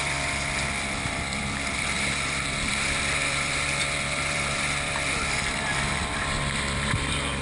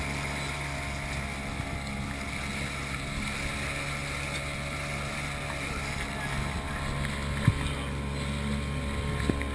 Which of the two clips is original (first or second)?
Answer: second